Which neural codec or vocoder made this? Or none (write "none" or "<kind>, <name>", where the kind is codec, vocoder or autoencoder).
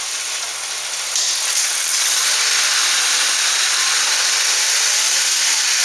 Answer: none